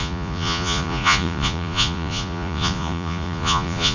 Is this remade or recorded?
remade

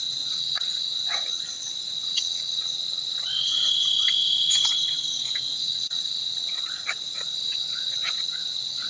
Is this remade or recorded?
remade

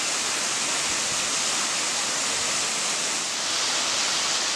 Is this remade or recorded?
recorded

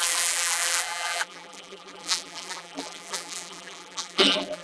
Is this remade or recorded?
remade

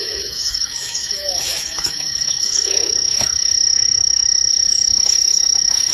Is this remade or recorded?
remade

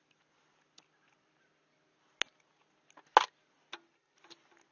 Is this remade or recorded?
recorded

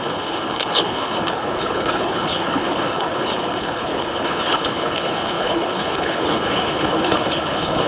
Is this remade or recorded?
remade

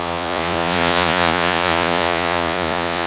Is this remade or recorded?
remade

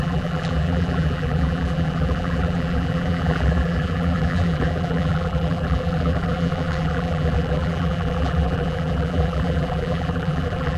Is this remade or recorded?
remade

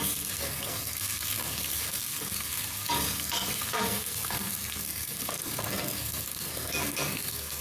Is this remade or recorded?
remade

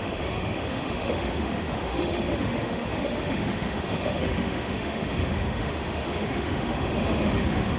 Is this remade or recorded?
remade